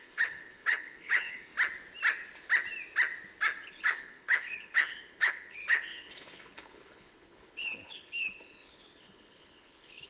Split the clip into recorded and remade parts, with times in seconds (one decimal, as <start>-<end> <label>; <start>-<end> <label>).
0.0-1.5 remade; 1.5-3.7 recorded; 3.7-10.1 remade